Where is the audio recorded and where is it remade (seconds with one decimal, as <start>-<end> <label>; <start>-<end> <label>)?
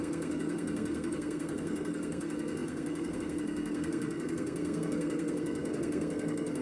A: 0.0-6.6 remade